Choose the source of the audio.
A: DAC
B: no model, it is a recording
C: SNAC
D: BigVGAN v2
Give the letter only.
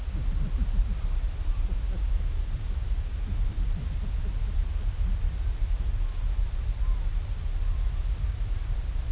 B